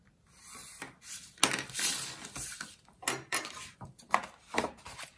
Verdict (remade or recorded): recorded